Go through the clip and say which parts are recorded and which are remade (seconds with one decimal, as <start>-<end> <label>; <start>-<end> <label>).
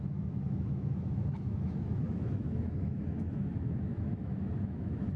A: 0.0-5.2 remade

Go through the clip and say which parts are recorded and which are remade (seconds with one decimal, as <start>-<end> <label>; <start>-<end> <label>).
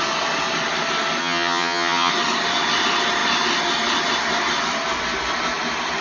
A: 0.0-1.2 recorded; 1.2-2.1 remade; 2.1-6.0 recorded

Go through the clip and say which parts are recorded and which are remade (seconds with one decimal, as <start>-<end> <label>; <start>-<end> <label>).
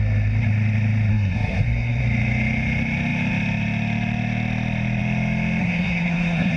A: 0.0-1.1 recorded; 1.1-2.0 remade; 2.0-5.6 recorded; 5.6-6.6 remade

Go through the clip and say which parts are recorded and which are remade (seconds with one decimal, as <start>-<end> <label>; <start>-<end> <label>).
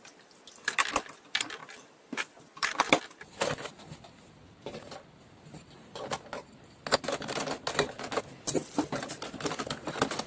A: 0.0-1.6 recorded; 1.6-3.3 remade; 3.3-8.6 recorded; 8.6-9.8 remade; 9.8-10.3 recorded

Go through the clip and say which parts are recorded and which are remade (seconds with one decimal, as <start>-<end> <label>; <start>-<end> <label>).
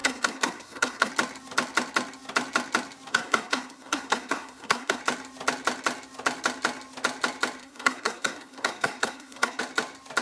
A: 0.0-1.1 remade; 1.1-3.1 recorded; 3.1-5.0 remade; 5.0-7.6 recorded; 7.6-9.6 remade; 9.6-10.2 recorded